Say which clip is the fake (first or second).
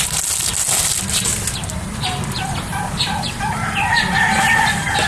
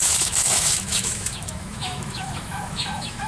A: second